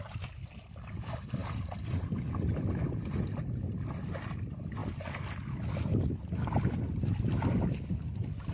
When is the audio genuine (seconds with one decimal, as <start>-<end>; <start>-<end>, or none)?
0.0-8.5